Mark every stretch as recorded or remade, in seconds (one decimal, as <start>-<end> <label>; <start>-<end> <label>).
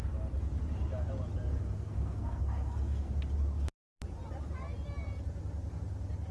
0.0-1.5 recorded; 1.5-3.2 remade; 3.2-6.3 recorded